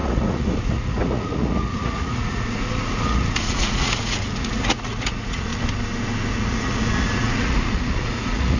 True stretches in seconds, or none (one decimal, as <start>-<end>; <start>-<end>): 5.5-6.3